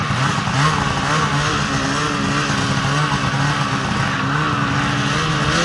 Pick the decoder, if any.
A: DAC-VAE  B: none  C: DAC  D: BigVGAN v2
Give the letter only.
B